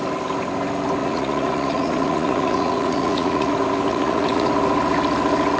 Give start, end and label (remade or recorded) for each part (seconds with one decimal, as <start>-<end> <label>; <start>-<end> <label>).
0.0-1.0 recorded; 1.0-3.5 remade; 3.5-3.9 recorded; 3.9-4.5 remade; 4.5-5.6 recorded